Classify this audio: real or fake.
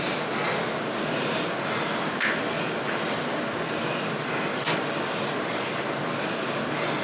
real